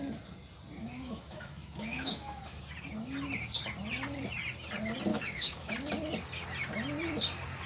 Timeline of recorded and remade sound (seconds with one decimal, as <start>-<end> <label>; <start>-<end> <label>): 0.0-0.8 recorded; 0.8-2.6 remade; 2.6-5.1 recorded; 5.1-5.7 remade; 5.7-7.7 recorded